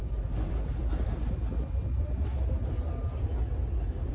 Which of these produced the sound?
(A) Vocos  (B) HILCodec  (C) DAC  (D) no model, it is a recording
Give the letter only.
D